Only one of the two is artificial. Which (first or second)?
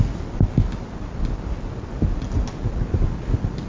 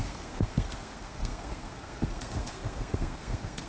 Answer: second